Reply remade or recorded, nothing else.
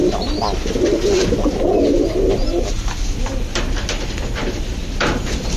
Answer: recorded